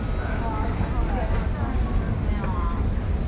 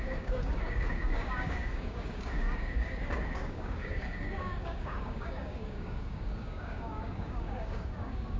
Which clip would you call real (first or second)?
first